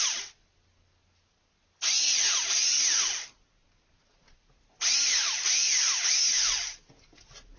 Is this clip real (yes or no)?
yes